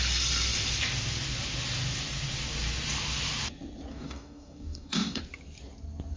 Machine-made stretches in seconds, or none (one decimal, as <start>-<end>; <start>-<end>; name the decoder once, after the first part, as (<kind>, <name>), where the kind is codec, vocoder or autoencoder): 3.9-5.2 (codec, DAC)